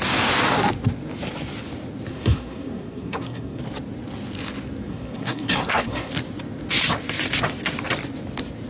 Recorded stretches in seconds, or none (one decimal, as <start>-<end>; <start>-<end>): 0.0-2.1; 3.6-4.9; 6.1-8.7